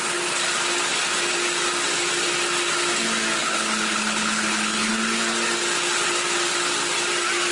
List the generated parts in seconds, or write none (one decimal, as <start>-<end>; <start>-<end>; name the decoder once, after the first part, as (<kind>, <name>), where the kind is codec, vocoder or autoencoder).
3.4-4.9 (codec, HILCodec)